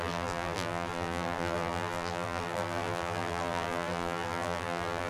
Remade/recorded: remade